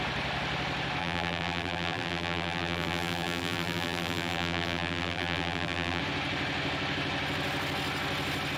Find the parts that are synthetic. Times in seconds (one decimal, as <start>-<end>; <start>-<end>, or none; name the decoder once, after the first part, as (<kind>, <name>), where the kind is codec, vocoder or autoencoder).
1.0-6.0 (vocoder, BigVGAN v2)